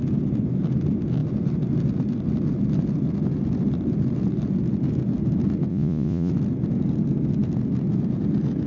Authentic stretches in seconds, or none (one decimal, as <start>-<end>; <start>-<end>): 0.0-5.7; 6.3-8.7